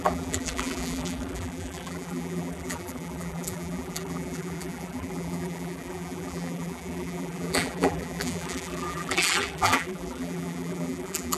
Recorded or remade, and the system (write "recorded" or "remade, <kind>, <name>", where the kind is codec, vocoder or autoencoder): remade, vocoder, BigVGAN v2